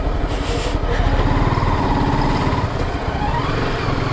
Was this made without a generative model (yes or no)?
yes